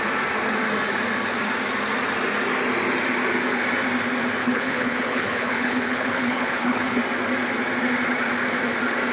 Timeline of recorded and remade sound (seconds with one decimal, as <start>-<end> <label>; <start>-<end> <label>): 0.0-4.4 recorded; 4.4-7.0 remade; 7.0-9.1 recorded

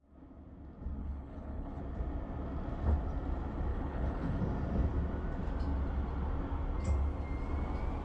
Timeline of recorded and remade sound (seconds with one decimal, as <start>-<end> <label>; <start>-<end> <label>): 0.0-1.0 recorded; 1.0-1.8 remade; 1.8-3.7 recorded; 3.7-4.4 remade; 4.4-8.0 recorded